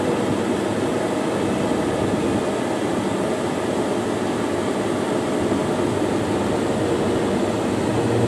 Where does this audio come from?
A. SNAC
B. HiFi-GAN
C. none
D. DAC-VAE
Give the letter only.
C